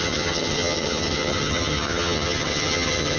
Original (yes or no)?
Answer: no